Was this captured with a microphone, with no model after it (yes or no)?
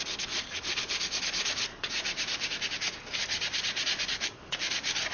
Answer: yes